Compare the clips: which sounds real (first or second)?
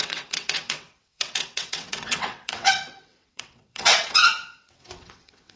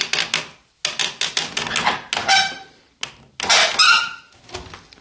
second